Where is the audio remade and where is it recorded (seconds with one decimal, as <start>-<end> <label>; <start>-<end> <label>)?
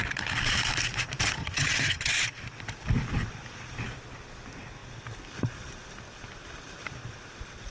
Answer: 0.0-1.4 recorded; 1.4-2.1 remade; 2.1-7.7 recorded